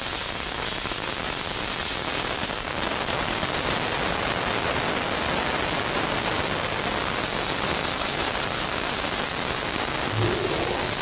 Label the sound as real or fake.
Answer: real